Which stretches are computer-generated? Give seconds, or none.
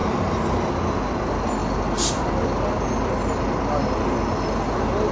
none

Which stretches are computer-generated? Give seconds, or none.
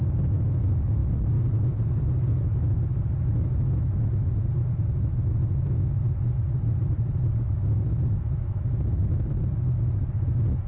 1.0-2.6 (vocoder, BigVGAN v2); 5.4-7.9; 9.0-10.0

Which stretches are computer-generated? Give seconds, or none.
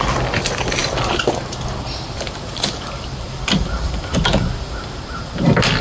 none